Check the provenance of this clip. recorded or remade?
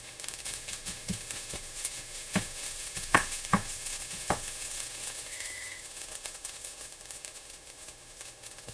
remade